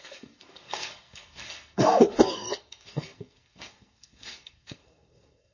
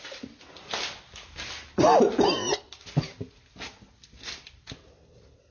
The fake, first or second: first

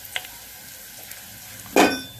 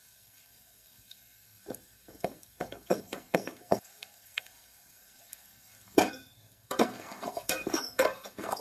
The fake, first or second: second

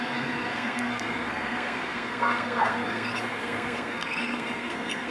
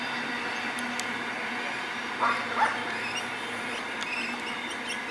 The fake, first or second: first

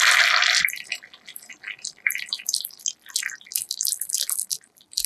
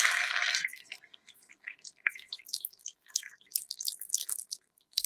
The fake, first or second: second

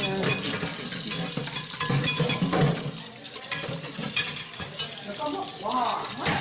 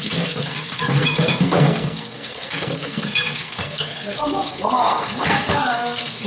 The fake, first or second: second